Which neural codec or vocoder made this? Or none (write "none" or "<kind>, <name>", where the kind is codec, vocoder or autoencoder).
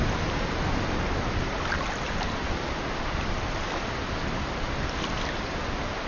none